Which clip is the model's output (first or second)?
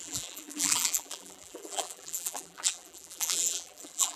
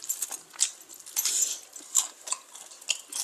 first